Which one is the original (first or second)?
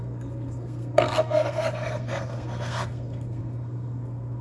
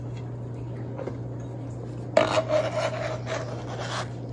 second